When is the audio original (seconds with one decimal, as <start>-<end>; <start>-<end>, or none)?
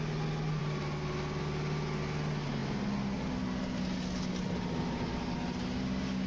0.0-6.3